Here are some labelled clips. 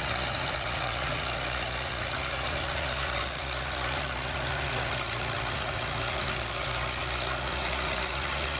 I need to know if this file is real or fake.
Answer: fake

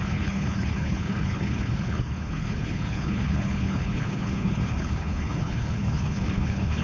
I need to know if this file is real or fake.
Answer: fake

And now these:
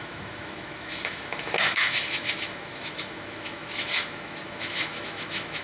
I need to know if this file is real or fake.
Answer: fake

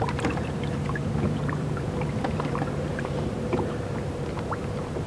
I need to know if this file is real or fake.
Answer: fake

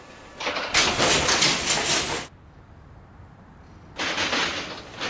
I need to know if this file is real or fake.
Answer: real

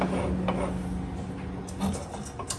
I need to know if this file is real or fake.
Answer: real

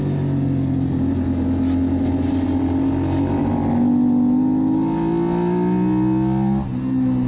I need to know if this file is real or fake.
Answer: real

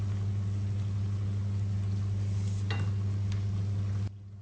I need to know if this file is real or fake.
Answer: real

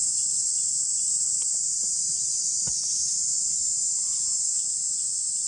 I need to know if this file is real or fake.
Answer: real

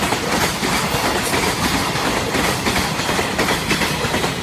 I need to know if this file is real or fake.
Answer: real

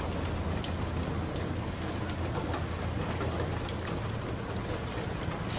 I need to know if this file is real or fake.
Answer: real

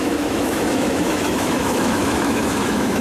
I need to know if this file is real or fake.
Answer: fake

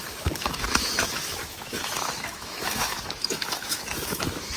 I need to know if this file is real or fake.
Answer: fake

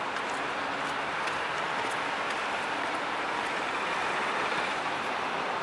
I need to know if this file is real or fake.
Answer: real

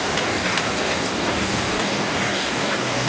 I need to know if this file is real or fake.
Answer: fake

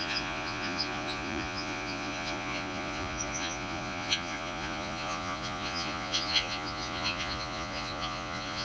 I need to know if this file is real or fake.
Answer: fake